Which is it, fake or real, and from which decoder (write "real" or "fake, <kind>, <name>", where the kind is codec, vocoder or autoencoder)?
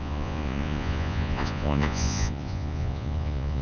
fake, vocoder, Vocos